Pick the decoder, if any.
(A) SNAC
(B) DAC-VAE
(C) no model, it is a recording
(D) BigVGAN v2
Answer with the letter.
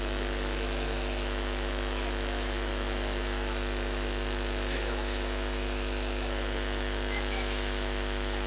B